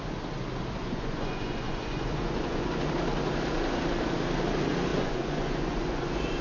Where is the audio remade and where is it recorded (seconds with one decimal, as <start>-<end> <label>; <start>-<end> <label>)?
0.0-0.8 recorded; 0.8-2.9 remade; 2.9-4.9 recorded; 4.9-6.4 remade